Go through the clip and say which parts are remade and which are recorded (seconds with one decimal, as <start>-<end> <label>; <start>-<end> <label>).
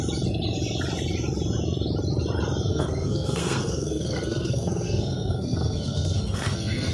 0.0-2.7 recorded; 2.7-6.9 remade